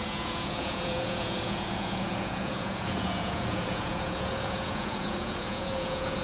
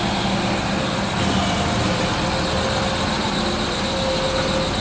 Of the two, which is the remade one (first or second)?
first